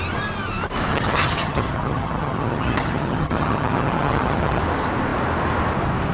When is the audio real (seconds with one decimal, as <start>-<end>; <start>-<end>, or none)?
0.0-0.9; 4.6-6.1